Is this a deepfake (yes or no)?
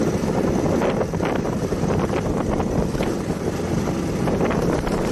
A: no